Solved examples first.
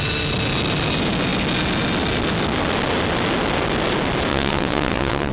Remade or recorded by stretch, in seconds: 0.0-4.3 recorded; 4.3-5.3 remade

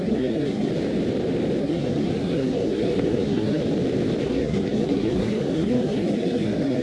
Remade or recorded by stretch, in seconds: 0.0-0.7 remade; 0.7-1.6 recorded; 1.6-3.6 remade; 3.6-4.2 recorded; 4.2-6.8 remade